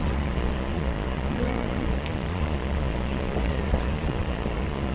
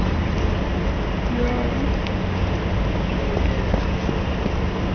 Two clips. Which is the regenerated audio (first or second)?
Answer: first